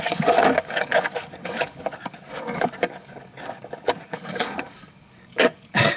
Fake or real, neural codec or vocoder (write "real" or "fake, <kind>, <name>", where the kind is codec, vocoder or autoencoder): fake, codec, DAC